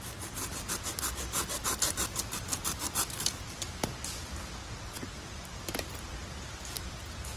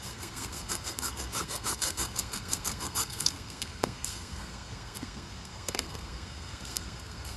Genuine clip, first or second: first